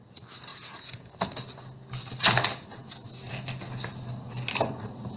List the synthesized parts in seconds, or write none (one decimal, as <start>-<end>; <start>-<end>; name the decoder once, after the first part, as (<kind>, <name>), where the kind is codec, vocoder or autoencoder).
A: 0.5-1.1 (vocoder, Vocos)